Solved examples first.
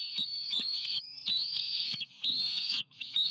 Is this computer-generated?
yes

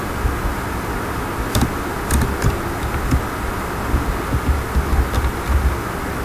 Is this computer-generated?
no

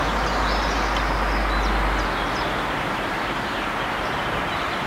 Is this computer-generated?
no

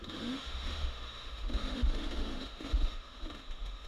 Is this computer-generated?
yes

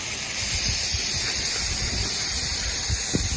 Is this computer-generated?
no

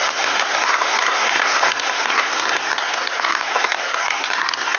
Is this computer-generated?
yes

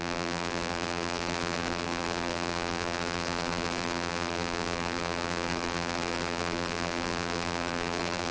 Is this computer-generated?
yes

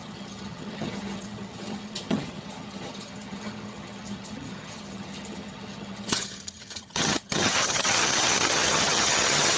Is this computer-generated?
yes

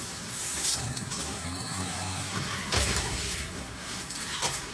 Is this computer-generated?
yes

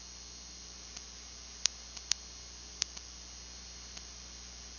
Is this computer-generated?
no